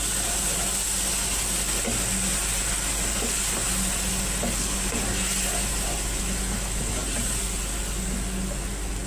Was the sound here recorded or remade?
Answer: recorded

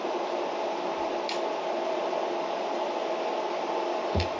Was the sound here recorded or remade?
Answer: recorded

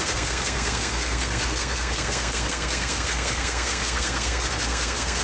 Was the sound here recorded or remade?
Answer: remade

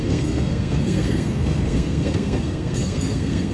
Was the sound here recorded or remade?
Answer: remade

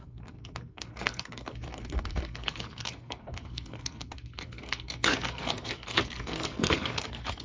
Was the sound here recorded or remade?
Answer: remade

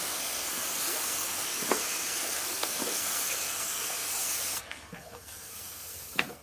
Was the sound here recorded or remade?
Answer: remade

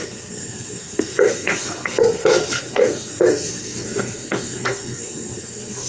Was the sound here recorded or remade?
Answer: remade